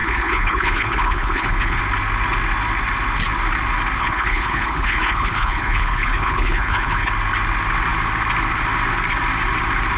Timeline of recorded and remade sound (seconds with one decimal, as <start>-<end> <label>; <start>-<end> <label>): 0.0-1.8 remade; 1.8-4.0 recorded; 4.0-7.1 remade; 7.1-10.0 recorded

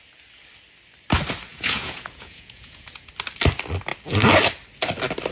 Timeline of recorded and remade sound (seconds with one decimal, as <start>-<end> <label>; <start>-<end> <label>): 0.0-1.5 recorded; 1.5-3.1 remade; 3.1-5.3 recorded

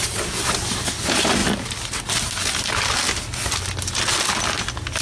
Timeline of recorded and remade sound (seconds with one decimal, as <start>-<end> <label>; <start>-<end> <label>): 0.0-5.0 recorded

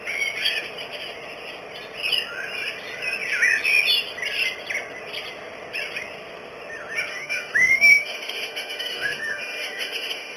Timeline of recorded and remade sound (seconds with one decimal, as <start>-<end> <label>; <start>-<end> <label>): 0.0-7.1 recorded; 7.1-10.4 remade

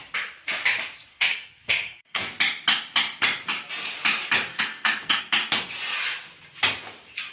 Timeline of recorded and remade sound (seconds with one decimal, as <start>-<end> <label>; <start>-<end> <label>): 0.0-1.1 recorded; 1.1-2.3 remade; 2.3-4.5 recorded; 4.5-5.2 remade; 5.2-7.3 recorded